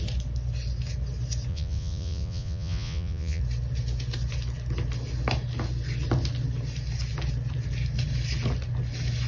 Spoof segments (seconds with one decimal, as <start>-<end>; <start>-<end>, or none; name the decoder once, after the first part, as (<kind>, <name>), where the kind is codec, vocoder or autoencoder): 1.5-3.4 (vocoder, Vocos)